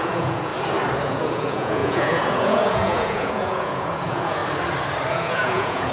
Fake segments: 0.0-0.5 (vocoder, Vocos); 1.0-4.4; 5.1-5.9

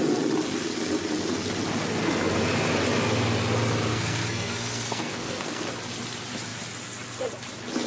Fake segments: 3.9-5.7 (codec, SNAC)

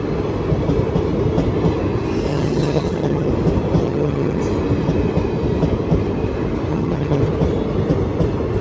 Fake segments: 2.3-3.3 (vocoder, HiFi-GAN); 3.8-4.4; 6.7-7.2

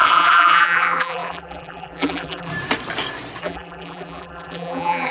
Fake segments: 0.0-2.5 (vocoder, BigVGAN v2); 3.4-5.1